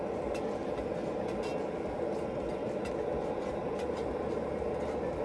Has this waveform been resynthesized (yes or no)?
no